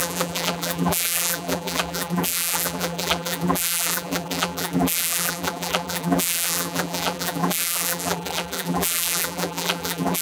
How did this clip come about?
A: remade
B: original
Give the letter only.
A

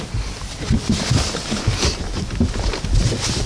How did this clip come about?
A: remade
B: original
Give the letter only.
A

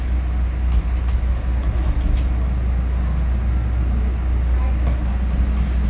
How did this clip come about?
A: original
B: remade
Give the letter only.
A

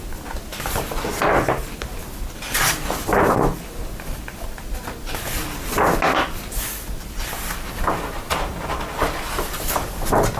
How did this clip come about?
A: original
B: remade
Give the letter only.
A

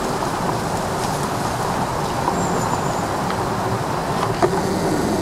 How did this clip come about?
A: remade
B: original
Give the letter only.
B